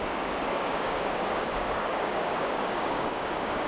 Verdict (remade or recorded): remade